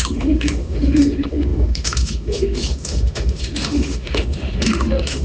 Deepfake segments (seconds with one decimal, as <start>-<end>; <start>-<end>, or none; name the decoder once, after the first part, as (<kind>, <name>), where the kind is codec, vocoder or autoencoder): 0.0-5.2 (autoencoder, DAC-VAE)